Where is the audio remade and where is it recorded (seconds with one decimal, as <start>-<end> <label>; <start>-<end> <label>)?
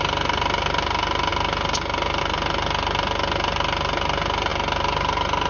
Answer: 0.0-5.5 recorded